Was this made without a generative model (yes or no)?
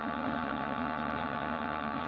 no